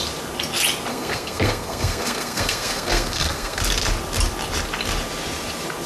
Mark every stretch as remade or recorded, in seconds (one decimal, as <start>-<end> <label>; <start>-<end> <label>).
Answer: 0.0-0.9 recorded; 0.9-3.6 remade; 3.6-5.9 recorded